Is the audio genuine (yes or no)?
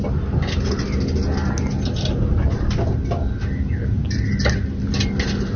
yes